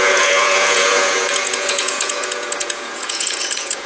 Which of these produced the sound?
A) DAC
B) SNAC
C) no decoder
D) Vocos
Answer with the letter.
D